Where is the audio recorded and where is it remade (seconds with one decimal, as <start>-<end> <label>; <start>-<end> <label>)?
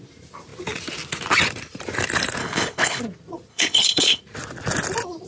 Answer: 0.0-2.4 recorded; 2.4-3.0 remade; 3.0-3.5 recorded; 3.5-4.2 remade; 4.2-5.3 recorded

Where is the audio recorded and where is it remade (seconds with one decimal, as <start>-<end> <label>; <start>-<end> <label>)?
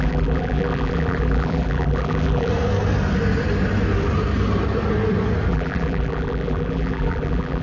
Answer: 0.0-2.5 remade; 2.5-5.5 recorded; 5.5-7.6 remade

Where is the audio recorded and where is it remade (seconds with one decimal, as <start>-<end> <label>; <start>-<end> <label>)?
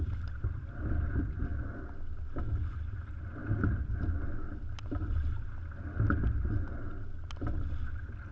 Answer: 0.0-8.3 recorded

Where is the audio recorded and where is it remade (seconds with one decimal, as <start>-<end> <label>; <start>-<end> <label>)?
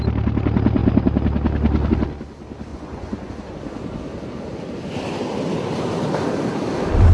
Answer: 0.0-2.7 recorded; 2.7-3.3 remade; 3.3-7.1 recorded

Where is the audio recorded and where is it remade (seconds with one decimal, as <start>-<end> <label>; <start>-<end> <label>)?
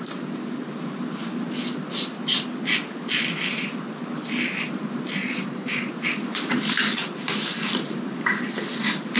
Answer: 0.0-5.2 recorded; 5.2-5.9 remade; 5.9-9.2 recorded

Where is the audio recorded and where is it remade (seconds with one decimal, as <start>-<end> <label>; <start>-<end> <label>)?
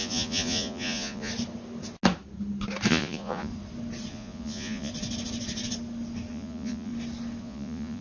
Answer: 0.0-1.3 remade; 1.3-2.9 recorded; 2.9-3.5 remade; 3.5-4.1 recorded; 4.1-4.9 remade; 4.9-6.3 recorded; 6.3-6.9 remade; 6.9-7.4 recorded; 7.4-8.0 remade